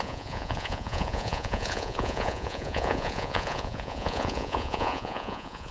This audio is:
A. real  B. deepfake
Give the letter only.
B